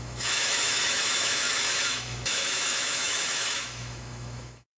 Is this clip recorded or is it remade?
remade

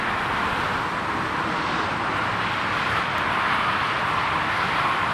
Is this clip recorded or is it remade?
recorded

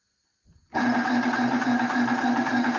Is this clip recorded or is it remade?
recorded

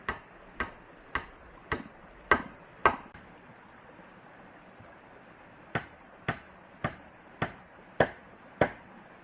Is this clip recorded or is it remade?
recorded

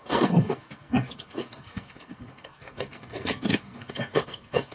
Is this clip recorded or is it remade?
remade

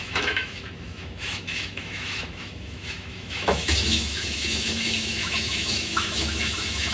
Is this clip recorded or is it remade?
remade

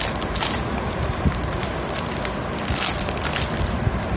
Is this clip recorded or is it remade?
recorded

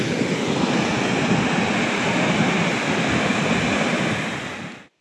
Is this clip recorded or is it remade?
recorded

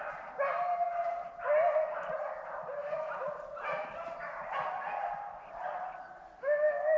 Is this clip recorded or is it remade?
recorded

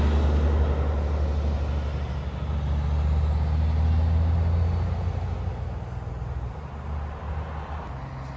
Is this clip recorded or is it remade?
recorded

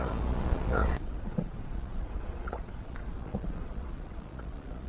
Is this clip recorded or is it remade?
remade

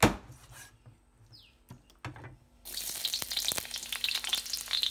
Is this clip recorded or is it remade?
recorded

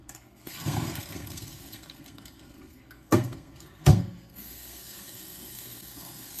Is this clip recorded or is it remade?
remade